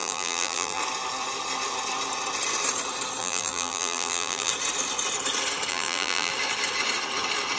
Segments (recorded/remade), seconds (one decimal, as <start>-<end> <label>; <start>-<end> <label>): 0.0-0.8 remade; 0.8-3.2 recorded; 3.2-4.5 remade; 4.5-5.7 recorded; 5.7-6.3 remade; 6.3-7.6 recorded